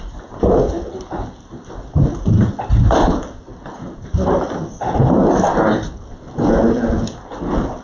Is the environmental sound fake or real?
real